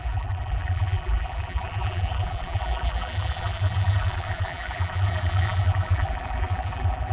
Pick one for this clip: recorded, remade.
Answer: remade